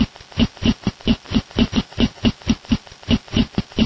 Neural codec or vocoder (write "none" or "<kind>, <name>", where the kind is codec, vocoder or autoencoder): vocoder, BigVGAN v2